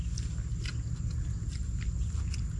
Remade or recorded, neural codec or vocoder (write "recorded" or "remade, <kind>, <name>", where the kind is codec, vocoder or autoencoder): recorded